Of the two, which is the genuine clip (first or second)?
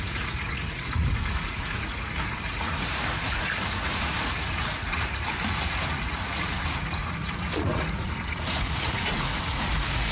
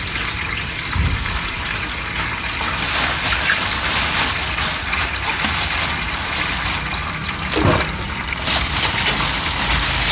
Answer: second